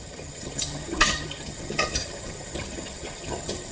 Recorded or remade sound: remade